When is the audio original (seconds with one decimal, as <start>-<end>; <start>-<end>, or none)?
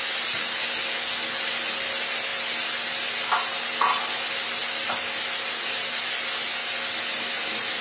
0.0-7.8